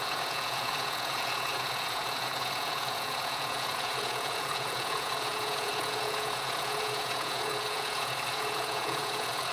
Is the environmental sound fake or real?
fake